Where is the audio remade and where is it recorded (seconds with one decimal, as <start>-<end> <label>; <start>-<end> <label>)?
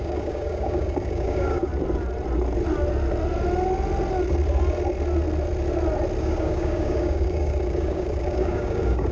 0.0-1.7 remade; 1.7-6.2 recorded; 6.2-9.1 remade